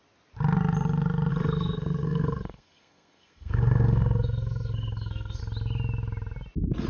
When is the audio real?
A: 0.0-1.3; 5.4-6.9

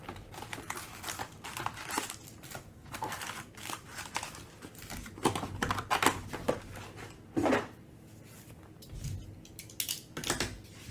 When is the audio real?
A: 0.0-2.7; 3.2-10.9

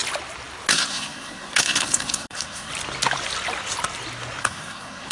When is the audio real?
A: 0.0-0.7; 2.7-4.4

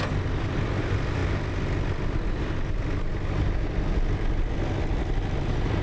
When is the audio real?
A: 0.0-5.8

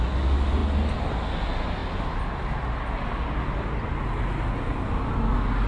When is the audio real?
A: 0.0-5.7

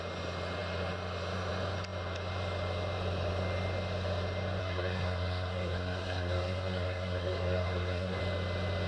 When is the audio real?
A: 0.0-4.6; 8.2-8.9